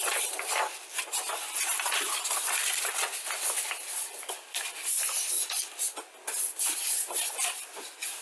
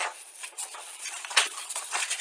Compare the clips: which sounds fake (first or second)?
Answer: second